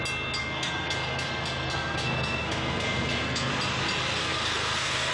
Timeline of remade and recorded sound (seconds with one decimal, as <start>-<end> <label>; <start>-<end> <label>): 0.0-0.4 recorded; 0.4-3.5 remade; 3.5-4.2 recorded; 4.2-5.1 remade